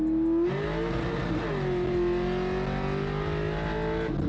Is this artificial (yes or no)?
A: no